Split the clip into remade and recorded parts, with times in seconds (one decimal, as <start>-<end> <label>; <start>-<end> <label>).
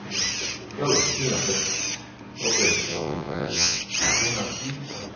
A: 0.0-2.9 recorded; 2.9-3.8 remade; 3.8-5.2 recorded